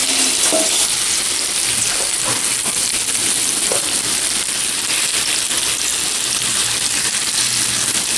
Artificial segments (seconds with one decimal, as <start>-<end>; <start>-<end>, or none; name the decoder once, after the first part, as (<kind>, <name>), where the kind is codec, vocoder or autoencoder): none